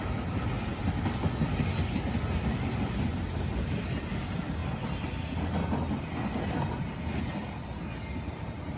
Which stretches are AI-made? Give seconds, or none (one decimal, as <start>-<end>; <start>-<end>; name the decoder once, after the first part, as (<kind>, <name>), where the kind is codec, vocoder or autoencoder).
none